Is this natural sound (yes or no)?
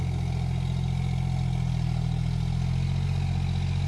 yes